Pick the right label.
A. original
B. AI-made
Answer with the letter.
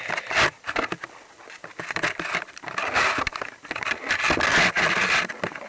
A